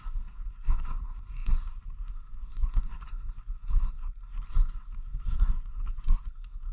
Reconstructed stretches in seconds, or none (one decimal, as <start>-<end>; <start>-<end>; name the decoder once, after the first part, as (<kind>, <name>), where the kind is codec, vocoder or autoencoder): 0.0-6.7 (codec, SNAC)